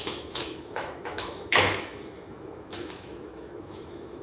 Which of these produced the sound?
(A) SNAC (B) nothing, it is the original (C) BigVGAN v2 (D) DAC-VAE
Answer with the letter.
D